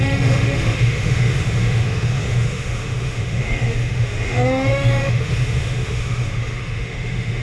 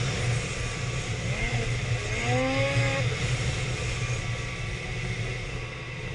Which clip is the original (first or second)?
second